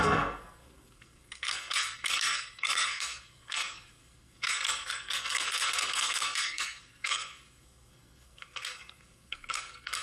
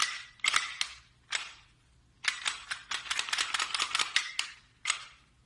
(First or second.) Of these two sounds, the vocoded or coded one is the first